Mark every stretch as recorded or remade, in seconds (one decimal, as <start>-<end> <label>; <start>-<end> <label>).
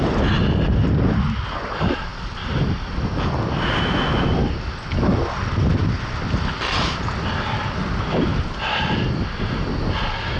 0.0-10.4 recorded